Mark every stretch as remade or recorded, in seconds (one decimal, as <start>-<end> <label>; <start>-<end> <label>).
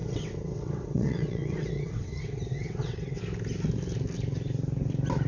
0.0-3.2 remade; 3.2-5.3 recorded